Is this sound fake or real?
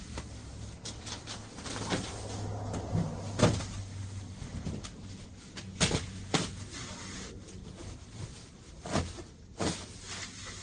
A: real